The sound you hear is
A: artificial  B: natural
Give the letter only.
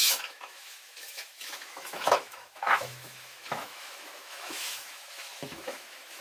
A